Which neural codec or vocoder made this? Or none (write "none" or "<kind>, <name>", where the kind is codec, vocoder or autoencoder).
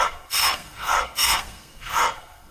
codec, SNAC